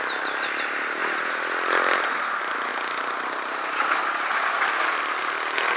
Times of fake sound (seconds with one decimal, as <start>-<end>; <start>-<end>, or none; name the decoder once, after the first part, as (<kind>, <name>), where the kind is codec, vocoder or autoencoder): none